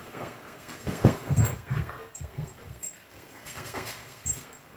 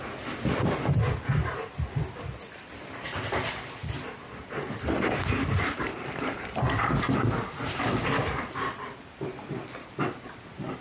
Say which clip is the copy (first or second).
first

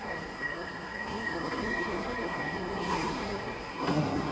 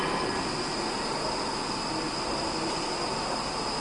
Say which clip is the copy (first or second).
first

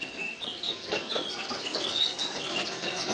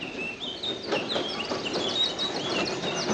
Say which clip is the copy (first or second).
first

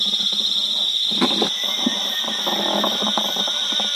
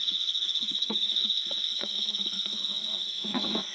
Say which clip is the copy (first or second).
second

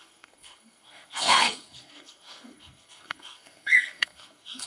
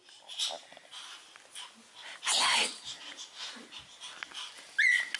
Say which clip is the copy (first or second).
first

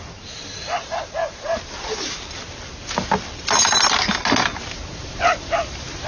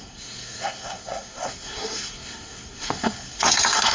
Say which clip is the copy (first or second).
second